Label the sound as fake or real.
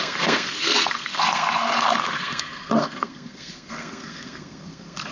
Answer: fake